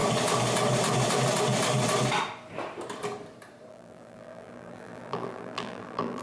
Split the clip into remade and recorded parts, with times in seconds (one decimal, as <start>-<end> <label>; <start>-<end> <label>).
0.0-3.7 recorded; 3.7-6.2 remade